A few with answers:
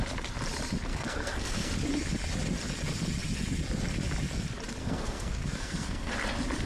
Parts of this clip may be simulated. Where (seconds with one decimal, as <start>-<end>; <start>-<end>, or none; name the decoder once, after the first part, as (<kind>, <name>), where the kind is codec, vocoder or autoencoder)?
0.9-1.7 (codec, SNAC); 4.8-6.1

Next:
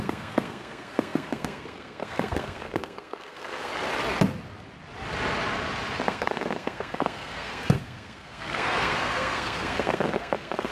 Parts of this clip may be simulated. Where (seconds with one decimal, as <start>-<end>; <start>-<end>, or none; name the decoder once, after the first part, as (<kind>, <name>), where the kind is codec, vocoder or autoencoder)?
0.0-3.7 (codec, SNAC); 6.0-10.7

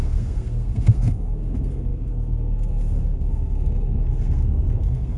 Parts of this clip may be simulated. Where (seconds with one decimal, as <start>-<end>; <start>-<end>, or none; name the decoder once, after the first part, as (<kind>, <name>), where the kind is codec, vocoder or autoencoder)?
0.0-5.2 (codec, SNAC)